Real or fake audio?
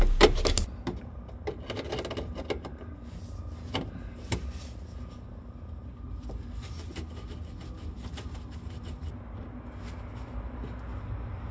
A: real